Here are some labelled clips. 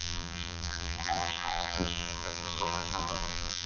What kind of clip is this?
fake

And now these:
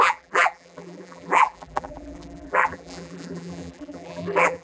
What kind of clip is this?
fake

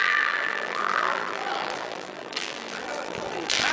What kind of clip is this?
fake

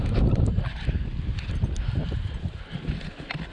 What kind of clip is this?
real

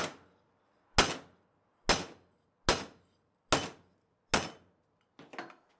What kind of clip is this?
real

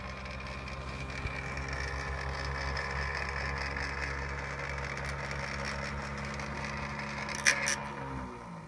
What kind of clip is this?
real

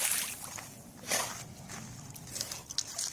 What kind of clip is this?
real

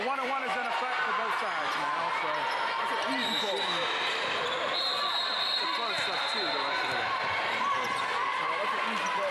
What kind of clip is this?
fake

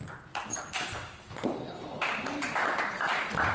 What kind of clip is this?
real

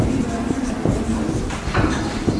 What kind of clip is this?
fake